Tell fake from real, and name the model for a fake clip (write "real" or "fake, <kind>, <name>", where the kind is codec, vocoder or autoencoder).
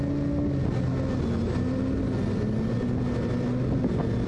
real